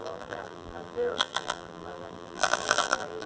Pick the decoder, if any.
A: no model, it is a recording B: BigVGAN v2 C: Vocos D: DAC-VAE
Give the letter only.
B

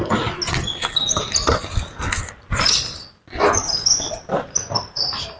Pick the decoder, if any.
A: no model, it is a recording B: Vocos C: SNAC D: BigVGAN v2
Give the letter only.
A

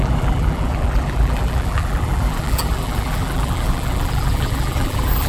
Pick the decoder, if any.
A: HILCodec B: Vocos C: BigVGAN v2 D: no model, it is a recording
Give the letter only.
C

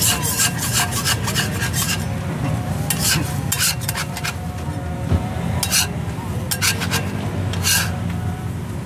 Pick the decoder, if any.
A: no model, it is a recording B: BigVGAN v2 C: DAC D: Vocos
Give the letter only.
A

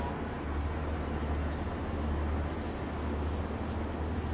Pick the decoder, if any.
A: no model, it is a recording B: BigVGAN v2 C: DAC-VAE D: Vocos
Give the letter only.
A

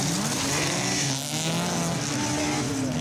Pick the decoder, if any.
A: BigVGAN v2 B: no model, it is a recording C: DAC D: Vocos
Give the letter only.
B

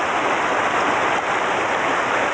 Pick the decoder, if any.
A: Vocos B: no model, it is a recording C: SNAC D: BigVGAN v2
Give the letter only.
B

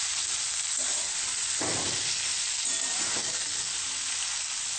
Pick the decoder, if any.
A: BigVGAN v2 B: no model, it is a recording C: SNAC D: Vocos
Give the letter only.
B